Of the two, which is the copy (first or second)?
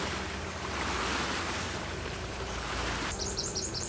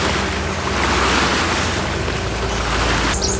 first